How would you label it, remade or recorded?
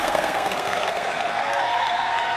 remade